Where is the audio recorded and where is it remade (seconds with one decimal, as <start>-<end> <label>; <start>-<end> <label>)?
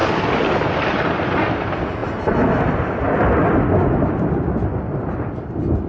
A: 0.0-5.9 recorded